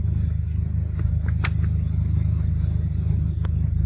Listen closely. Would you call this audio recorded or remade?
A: recorded